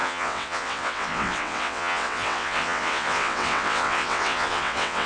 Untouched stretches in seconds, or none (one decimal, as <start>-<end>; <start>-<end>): none